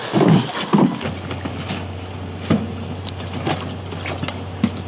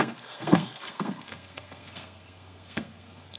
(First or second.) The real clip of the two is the first